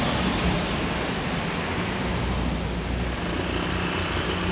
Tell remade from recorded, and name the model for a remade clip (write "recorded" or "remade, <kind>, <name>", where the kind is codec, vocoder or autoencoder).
recorded